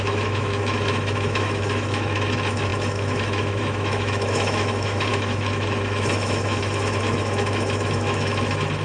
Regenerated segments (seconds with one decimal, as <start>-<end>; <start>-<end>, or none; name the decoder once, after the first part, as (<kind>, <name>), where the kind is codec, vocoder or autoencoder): 0.0-8.8 (autoencoder, DAC-VAE)